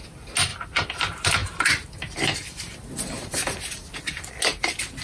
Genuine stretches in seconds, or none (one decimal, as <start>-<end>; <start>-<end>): 0.0-5.0